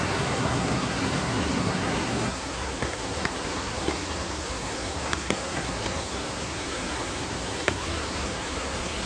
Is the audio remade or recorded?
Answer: remade